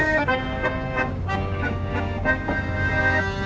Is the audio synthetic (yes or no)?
yes